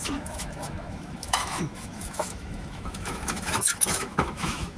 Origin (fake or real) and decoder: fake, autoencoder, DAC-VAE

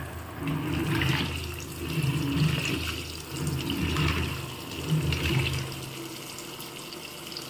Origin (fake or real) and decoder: real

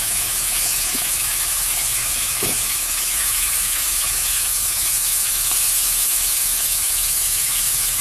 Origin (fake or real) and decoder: fake, autoencoder, DAC-VAE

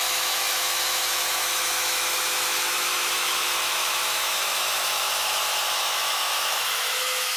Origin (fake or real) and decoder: fake, autoencoder, DAC-VAE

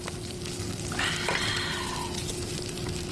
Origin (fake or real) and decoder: real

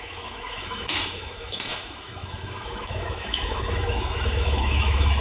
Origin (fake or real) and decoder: fake, autoencoder, DAC-VAE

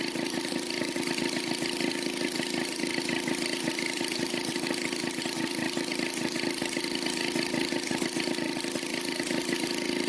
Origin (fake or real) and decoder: real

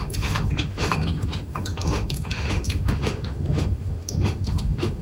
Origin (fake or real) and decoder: fake, autoencoder, DAC-VAE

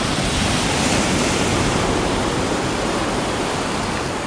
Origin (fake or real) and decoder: real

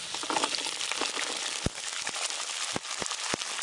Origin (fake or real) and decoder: real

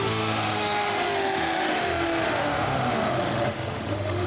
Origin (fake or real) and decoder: fake, autoencoder, DAC-VAE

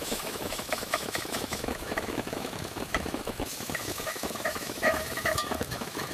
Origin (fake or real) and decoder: fake, autoencoder, DAC-VAE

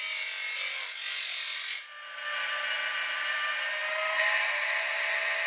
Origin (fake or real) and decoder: real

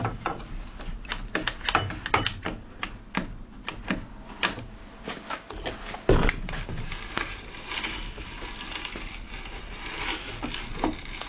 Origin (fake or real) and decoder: real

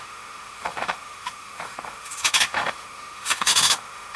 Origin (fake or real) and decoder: fake, autoencoder, DAC-VAE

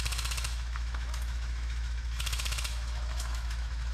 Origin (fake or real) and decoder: fake, autoencoder, DAC-VAE